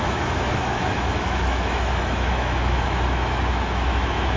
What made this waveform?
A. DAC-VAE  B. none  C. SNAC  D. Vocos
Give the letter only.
A